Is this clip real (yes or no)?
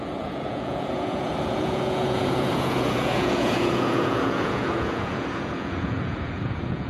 no